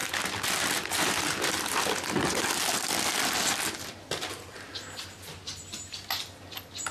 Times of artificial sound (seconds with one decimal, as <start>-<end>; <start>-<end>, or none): none